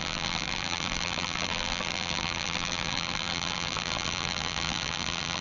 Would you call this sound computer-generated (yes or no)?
yes